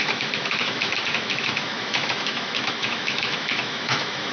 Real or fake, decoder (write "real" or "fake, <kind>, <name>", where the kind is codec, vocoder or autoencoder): fake, autoencoder, DAC-VAE